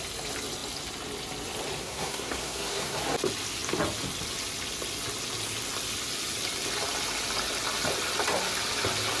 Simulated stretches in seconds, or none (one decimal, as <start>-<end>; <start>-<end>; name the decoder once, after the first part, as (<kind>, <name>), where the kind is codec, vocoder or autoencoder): 1.8-3.0 (codec, SNAC)